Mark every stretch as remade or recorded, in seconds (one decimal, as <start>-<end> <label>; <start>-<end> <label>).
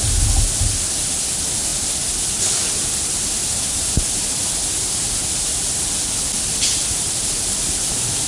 0.0-8.3 recorded